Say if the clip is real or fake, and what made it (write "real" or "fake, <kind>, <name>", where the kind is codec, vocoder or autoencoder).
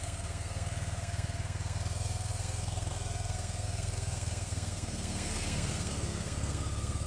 fake, codec, SNAC